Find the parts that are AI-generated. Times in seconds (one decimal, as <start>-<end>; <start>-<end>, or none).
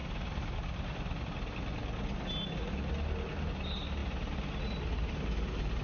none